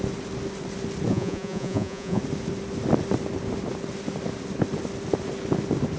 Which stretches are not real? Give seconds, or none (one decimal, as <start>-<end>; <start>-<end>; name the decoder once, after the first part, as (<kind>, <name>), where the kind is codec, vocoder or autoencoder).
1.1-2.2 (vocoder, Vocos)